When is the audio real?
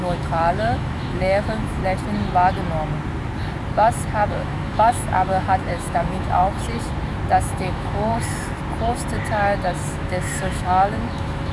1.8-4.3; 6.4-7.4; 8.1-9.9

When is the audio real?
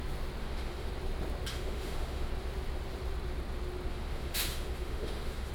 0.0-0.4; 0.9-1.5; 2.3-3.9